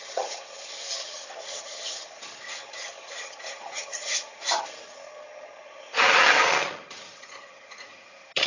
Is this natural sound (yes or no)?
no